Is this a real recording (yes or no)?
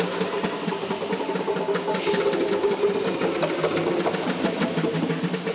yes